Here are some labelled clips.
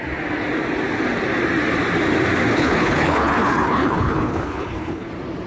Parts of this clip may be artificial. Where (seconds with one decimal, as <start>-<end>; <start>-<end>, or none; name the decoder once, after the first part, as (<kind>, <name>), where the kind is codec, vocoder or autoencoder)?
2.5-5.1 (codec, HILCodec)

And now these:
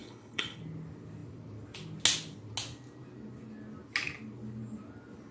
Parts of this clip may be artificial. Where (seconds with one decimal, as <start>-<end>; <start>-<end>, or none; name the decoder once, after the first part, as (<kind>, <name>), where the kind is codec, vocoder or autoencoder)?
0.0-0.6 (codec, HILCodec)

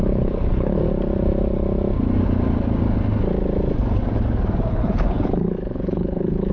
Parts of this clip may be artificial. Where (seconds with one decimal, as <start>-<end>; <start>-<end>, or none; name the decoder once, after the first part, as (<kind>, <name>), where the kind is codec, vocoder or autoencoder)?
0.0-0.8 (codec, HILCodec); 4.7-6.5

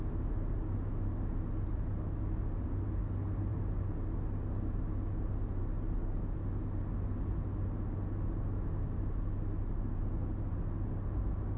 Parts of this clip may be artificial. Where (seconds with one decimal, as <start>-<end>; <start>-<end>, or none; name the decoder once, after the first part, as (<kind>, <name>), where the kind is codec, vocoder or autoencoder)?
none

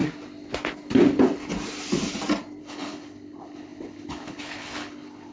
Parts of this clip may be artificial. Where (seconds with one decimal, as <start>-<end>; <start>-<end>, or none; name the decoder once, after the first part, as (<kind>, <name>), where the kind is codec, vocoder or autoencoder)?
2.6-5.3 (codec, HILCodec)

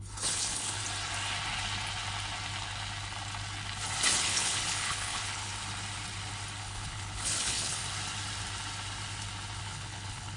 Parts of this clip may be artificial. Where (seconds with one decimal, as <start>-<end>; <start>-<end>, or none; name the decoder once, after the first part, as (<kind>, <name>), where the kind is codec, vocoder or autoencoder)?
0.0-0.8 (codec, HILCodec); 4.2-5.5; 6.6-7.8; 9.6-10.4

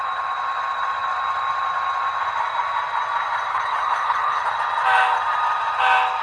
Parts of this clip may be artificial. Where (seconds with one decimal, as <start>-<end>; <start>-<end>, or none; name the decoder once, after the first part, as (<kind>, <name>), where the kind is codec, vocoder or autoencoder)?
3.5-4.5 (codec, HILCodec)

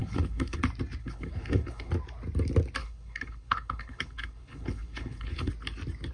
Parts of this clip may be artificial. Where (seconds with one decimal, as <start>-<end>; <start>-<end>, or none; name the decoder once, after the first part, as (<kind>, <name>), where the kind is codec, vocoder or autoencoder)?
0.0-0.6 (codec, HILCodec); 1.0-1.9; 2.8-5.5